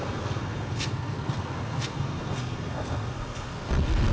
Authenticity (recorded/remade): remade